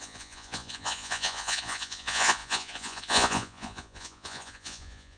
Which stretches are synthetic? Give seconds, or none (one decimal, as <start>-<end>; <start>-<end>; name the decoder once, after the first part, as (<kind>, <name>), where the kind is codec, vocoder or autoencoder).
0.0-5.2 (vocoder, Vocos)